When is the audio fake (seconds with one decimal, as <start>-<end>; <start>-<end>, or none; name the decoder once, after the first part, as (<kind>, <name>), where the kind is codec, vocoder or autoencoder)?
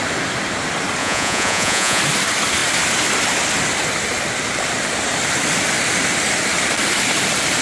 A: 1.0-2.0 (vocoder, Vocos)